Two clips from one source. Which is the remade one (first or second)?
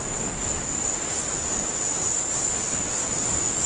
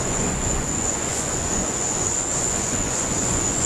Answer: second